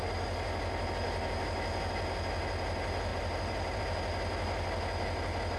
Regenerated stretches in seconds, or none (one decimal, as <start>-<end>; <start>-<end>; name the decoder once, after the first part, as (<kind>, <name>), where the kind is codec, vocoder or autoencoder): 3.1-3.8 (vocoder, BigVGAN v2)